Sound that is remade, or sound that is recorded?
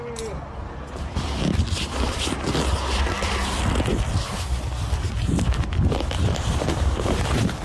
recorded